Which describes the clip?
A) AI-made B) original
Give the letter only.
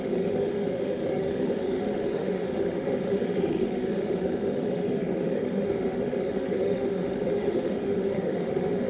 A